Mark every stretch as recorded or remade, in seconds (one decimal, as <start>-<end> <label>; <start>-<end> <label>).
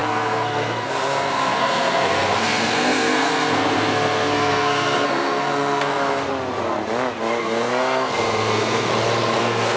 0.0-6.3 remade; 6.3-7.4 recorded; 7.4-8.9 remade; 8.9-9.4 recorded; 9.4-9.8 remade